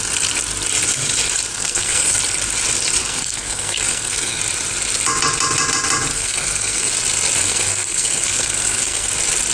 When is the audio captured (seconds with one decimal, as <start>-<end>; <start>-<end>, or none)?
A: 0.0-1.5; 2.1-3.0; 4.4-6.1; 6.9-7.4; 9.1-9.5